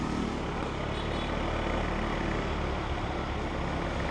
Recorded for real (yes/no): yes